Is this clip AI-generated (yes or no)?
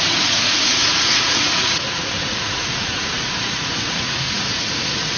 yes